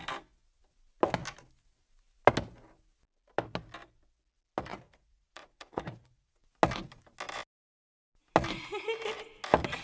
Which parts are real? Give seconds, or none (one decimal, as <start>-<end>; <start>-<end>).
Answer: 0.0-4.7; 6.5-9.8

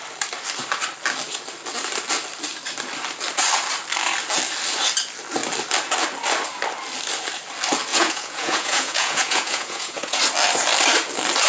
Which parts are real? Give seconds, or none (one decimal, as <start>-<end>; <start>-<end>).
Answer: 0.0-7.9; 10.2-11.5

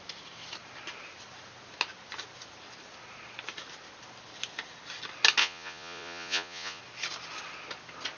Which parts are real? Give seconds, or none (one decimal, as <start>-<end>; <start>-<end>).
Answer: 0.0-5.4; 6.8-8.2

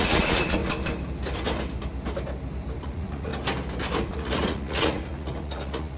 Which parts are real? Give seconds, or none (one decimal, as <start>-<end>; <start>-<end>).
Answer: 0.6-2.8; 3.3-4.1

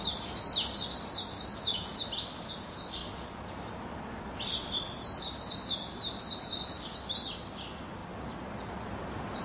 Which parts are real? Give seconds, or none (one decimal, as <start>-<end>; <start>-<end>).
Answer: 0.0-9.4

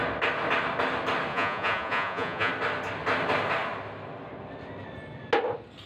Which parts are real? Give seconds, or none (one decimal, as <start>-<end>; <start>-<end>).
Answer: 0.0-1.3; 2.5-5.9

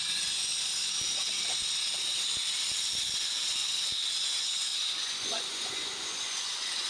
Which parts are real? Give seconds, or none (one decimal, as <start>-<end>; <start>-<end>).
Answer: 0.5-4.2